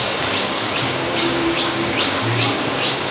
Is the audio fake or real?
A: fake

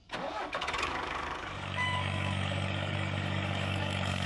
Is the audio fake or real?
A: fake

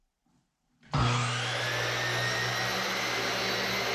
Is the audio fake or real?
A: real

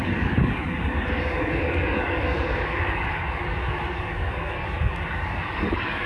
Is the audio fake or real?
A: fake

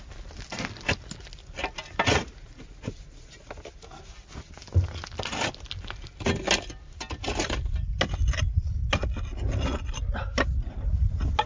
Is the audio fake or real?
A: real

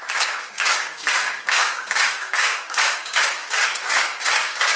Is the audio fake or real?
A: fake